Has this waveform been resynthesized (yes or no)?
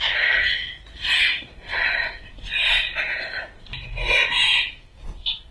no